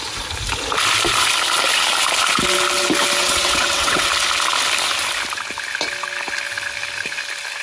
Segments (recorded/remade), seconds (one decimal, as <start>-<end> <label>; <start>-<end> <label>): 0.0-3.2 recorded; 3.2-4.1 remade; 4.1-7.6 recorded